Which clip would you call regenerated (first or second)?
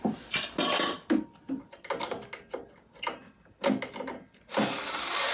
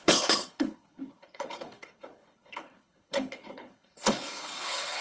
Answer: second